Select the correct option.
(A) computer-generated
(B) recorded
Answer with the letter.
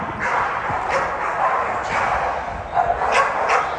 B